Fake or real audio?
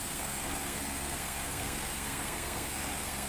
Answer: fake